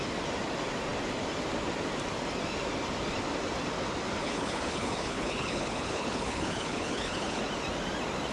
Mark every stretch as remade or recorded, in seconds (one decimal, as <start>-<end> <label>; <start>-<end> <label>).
0.0-4.2 recorded; 4.2-7.4 remade; 7.4-8.3 recorded